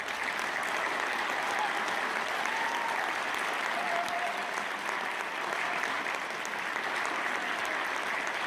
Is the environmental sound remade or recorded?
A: recorded